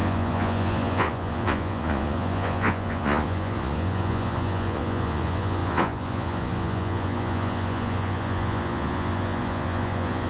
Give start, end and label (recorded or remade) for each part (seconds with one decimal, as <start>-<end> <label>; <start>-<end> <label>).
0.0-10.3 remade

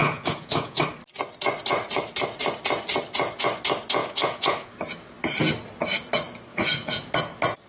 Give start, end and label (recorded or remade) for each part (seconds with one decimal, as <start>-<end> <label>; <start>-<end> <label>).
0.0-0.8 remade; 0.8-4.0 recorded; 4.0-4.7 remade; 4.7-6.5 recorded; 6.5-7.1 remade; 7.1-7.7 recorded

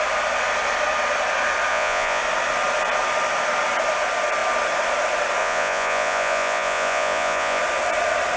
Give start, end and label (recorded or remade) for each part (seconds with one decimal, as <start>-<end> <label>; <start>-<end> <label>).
0.0-1.7 recorded; 1.7-2.2 remade; 2.2-5.4 recorded; 5.4-7.6 remade; 7.6-8.4 recorded

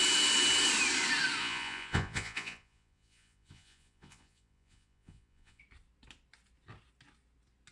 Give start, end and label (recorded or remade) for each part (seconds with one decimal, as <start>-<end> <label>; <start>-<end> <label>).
0.0-1.4 recorded; 1.4-5.6 remade; 5.6-7.7 recorded

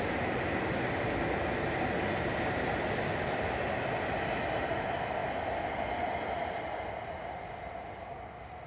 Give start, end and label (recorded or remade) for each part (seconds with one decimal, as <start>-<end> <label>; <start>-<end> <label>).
0.0-8.7 recorded

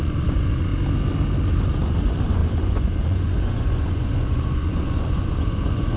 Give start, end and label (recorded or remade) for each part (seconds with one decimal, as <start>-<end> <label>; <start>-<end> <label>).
0.0-0.7 remade; 0.7-1.5 recorded; 1.5-6.0 remade

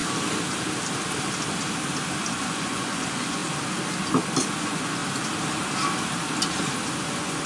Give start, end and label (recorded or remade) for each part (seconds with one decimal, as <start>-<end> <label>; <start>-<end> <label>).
0.0-2.3 recorded; 2.3-3.4 remade; 3.4-4.5 recorded; 4.5-5.0 remade; 5.0-7.1 recorded; 7.1-7.5 remade